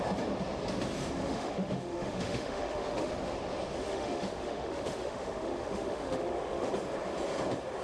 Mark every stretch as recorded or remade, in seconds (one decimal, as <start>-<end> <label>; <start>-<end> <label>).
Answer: 0.0-1.2 recorded; 1.2-3.1 remade; 3.1-3.8 recorded; 3.8-6.7 remade; 6.7-7.8 recorded